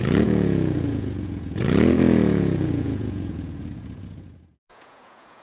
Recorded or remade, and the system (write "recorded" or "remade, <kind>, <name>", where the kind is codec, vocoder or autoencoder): remade, vocoder, Vocos